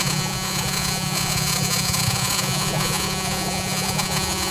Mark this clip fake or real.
fake